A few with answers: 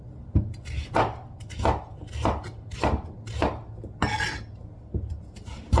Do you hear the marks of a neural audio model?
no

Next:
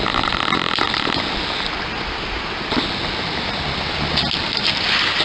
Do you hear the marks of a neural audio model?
no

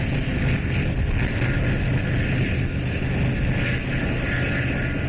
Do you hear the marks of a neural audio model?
no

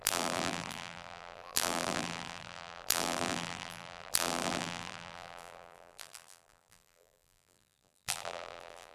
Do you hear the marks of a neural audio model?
yes